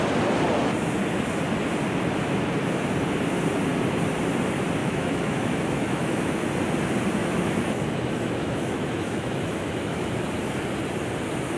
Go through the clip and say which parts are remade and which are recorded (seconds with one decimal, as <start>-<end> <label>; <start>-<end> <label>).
0.0-4.8 recorded; 4.8-6.3 remade; 6.3-7.2 recorded; 7.2-10.1 remade; 10.1-11.6 recorded